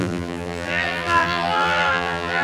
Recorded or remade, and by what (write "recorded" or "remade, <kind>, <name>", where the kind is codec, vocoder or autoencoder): remade, vocoder, BigVGAN v2